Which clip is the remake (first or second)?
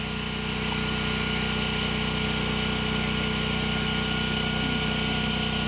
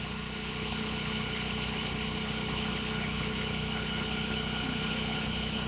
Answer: second